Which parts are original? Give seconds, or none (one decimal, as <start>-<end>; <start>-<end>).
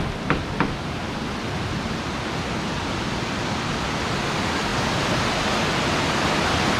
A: 0.0-6.8